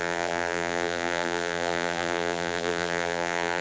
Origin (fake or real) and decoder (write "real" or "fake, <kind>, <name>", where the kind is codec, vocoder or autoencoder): fake, vocoder, BigVGAN v2